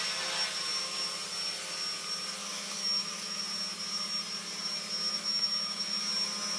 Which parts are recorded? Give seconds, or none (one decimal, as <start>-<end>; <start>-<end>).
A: 0.0-2.4; 3.4-5.1; 6.0-6.6